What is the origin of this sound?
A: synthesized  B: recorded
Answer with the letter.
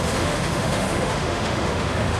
A